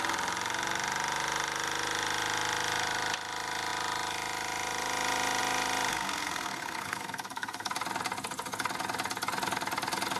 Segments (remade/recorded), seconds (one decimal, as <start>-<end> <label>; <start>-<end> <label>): 0.0-5.9 recorded; 5.9-7.7 remade; 7.7-10.2 recorded